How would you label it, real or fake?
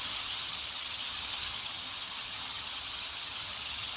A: fake